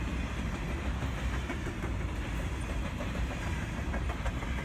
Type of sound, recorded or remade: recorded